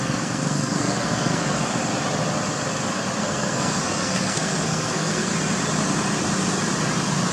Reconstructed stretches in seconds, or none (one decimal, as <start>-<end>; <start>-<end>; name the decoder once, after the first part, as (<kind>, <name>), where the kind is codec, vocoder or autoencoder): 0.0-1.8 (codec, SNAC); 3.2-5.3